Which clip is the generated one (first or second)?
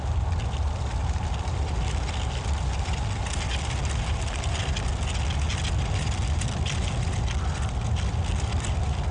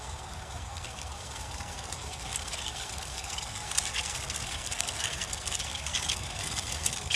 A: second